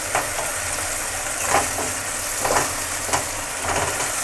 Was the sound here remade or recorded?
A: recorded